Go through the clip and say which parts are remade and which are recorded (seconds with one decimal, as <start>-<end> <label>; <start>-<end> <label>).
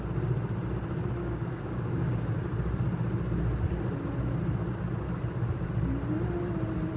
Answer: 0.0-1.2 recorded; 1.2-2.4 remade; 2.4-7.0 recorded